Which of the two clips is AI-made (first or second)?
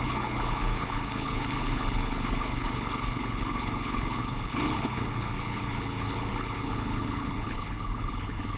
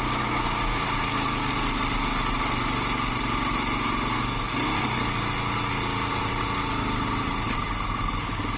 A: first